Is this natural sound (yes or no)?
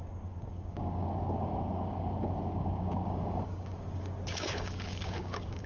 no